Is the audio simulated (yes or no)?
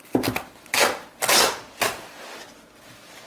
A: no